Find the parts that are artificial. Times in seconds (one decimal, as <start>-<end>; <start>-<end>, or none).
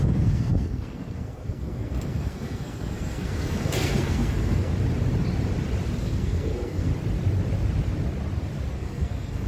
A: 0.0-4.7; 6.0-6.9; 8.7-9.5